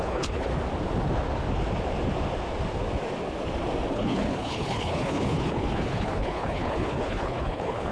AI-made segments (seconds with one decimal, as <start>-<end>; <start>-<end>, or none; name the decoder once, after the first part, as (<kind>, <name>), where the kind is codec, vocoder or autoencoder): 0.0-0.5 (codec, HILCodec); 3.9-7.9